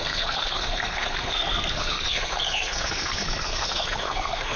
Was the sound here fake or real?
fake